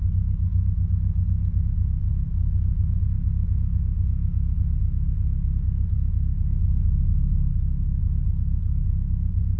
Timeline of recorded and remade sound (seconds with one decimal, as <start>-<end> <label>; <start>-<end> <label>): 0.0-2.0 recorded; 2.0-3.0 remade; 3.0-9.6 recorded